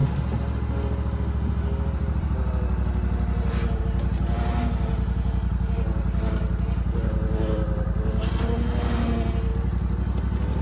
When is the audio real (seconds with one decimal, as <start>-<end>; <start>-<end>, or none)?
0.0-10.6